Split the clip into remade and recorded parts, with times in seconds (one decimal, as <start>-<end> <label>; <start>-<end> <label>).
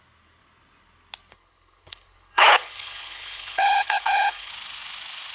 0.0-1.3 recorded; 1.3-4.5 remade; 4.5-5.3 recorded